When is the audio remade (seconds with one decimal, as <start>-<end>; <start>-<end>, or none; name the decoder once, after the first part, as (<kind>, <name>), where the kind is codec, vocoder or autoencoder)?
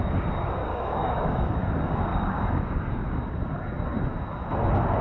0.6-1.6 (codec, DAC); 2.1-2.8